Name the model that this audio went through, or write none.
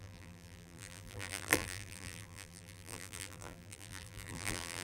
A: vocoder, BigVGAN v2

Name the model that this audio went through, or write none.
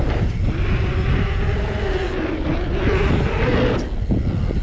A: none